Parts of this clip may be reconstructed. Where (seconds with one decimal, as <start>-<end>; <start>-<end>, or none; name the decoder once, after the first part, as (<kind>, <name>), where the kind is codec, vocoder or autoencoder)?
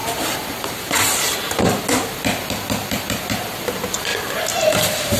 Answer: 0.0-1.7 (vocoder, BigVGAN v2)